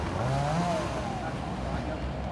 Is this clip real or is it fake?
real